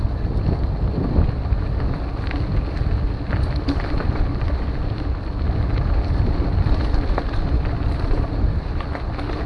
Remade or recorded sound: remade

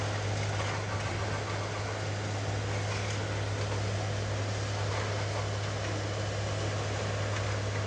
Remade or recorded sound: recorded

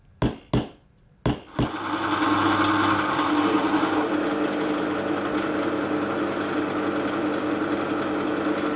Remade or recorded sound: recorded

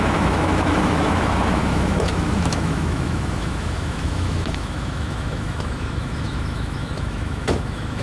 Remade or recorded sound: remade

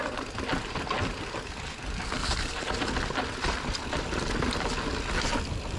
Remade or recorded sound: recorded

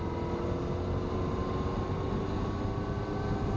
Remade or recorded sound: recorded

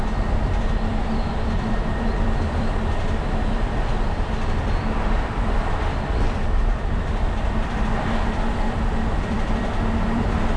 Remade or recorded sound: remade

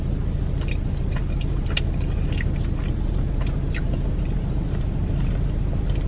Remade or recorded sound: recorded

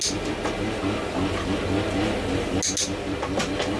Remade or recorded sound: recorded